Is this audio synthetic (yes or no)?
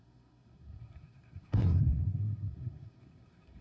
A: yes